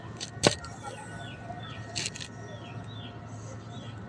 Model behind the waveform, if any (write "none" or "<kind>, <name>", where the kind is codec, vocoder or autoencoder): none